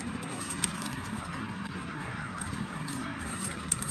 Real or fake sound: fake